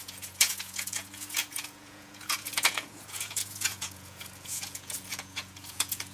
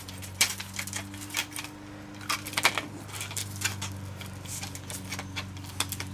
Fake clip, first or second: first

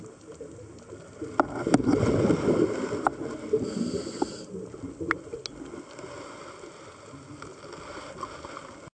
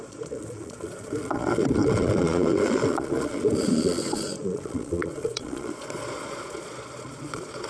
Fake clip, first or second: second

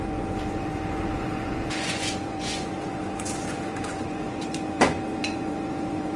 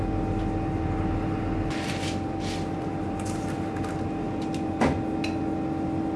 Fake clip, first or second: first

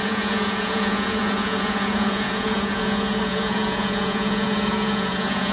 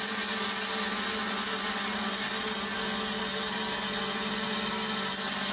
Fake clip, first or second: first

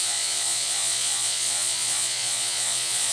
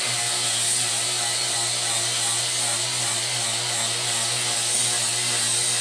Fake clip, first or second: first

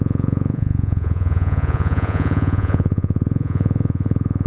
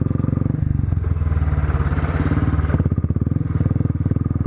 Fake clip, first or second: first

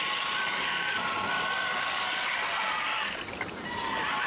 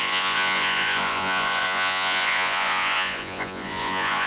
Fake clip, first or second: second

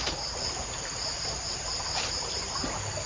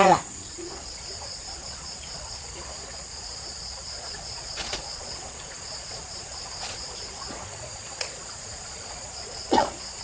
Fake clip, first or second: second